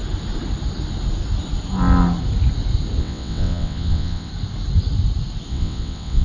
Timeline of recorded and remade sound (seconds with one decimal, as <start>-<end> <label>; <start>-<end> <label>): 0.0-3.0 recorded; 3.0-4.3 remade; 4.3-5.5 recorded; 5.5-6.2 remade